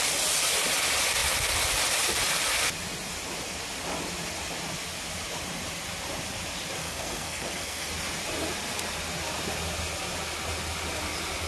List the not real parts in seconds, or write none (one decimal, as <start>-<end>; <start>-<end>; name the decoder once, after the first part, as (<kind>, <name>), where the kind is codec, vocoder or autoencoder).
6.8-7.9 (codec, SNAC)